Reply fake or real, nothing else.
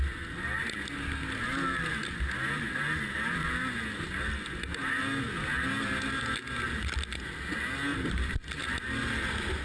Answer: real